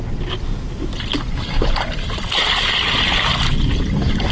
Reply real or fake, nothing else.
real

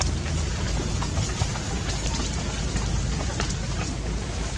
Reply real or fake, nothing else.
real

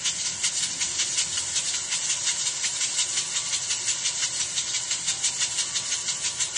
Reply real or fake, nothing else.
real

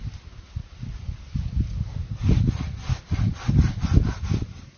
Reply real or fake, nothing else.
real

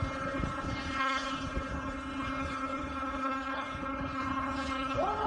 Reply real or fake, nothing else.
fake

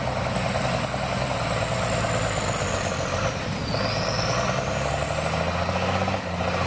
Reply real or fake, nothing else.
real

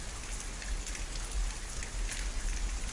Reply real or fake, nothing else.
real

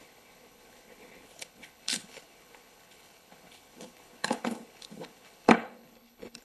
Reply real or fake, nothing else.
fake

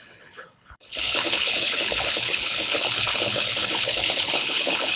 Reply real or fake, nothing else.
fake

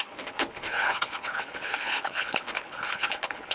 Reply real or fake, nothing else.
fake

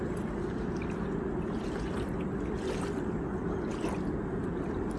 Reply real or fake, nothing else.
real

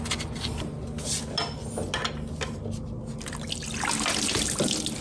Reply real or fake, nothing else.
real